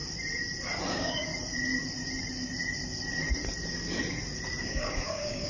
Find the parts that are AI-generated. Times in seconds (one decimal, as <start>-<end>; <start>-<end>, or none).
0.9-1.3; 4.6-5.5